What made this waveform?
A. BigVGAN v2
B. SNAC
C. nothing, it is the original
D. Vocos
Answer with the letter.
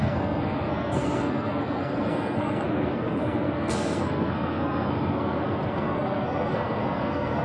B